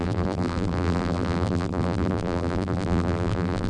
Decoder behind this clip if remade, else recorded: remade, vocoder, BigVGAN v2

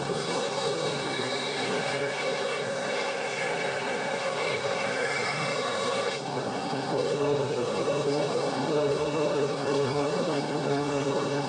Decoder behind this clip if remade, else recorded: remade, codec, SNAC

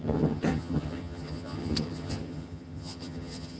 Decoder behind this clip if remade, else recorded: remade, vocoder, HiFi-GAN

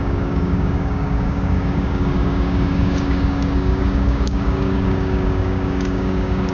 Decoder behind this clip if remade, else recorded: remade, codec, DAC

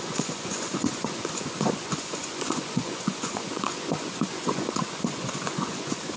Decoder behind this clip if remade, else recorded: remade, vocoder, Vocos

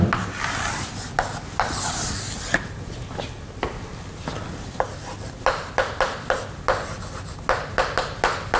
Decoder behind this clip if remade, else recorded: recorded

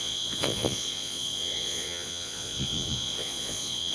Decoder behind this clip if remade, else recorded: remade, vocoder, Vocos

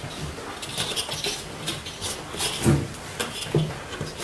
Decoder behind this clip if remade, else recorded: recorded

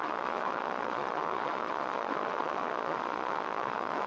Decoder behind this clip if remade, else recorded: remade, vocoder, Vocos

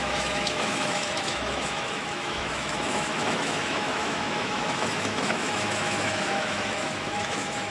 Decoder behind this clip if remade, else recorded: remade, autoencoder, DAC-VAE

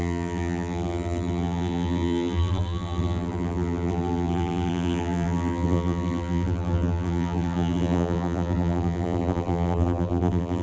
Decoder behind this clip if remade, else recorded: remade, vocoder, BigVGAN v2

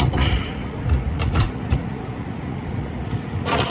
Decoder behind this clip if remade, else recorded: remade, vocoder, Vocos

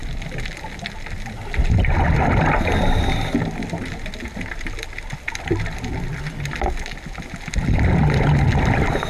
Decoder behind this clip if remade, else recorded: recorded